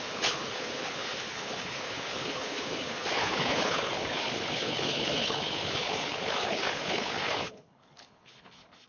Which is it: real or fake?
fake